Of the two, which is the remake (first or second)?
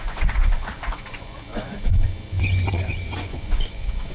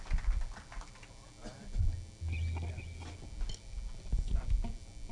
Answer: first